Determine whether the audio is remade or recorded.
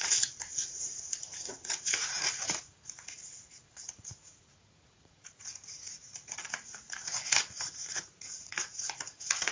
remade